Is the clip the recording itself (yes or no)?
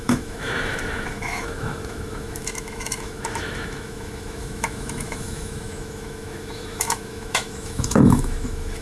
no